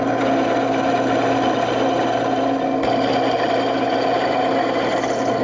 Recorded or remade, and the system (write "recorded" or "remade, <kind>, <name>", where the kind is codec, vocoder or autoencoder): recorded